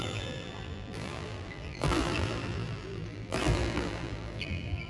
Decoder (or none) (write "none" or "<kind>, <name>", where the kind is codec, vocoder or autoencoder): vocoder, BigVGAN v2